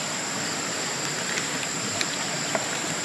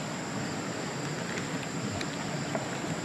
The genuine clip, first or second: second